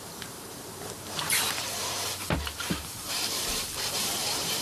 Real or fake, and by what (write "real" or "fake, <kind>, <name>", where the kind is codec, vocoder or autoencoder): fake, vocoder, BigVGAN v2